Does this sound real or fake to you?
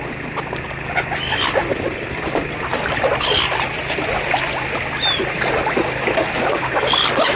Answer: real